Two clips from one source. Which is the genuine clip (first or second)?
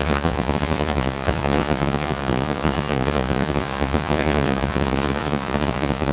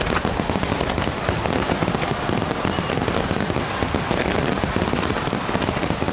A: second